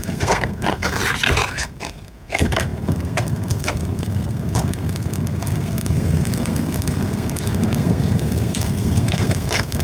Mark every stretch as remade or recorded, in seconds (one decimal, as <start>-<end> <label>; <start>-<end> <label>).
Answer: 0.0-1.0 remade; 1.0-1.5 recorded; 1.5-9.8 remade